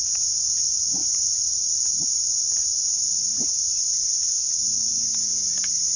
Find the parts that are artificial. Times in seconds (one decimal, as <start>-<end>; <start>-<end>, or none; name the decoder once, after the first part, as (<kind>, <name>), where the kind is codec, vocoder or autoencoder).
1.0-1.7 (vocoder, Vocos); 3.3-4.3; 4.9-6.0